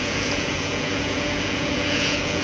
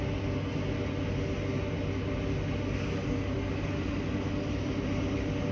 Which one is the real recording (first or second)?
second